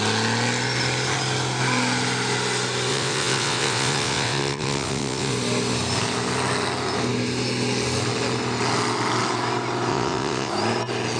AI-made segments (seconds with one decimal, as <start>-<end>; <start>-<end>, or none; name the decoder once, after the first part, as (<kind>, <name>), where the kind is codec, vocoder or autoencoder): 2.9-5.3 (vocoder, WaveNeXt); 9.9-10.5